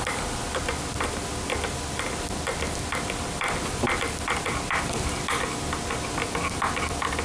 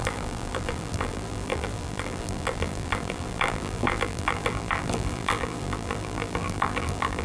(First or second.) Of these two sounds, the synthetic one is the second